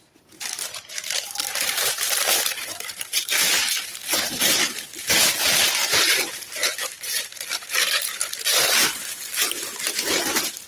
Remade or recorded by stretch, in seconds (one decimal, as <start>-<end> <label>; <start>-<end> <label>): 0.0-10.7 remade